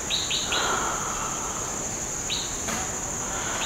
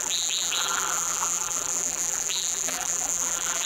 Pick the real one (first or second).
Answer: first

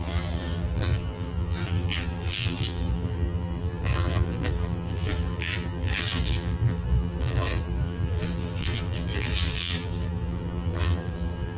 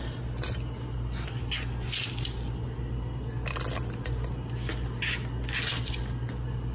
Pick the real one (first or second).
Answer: second